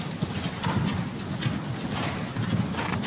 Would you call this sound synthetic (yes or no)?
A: no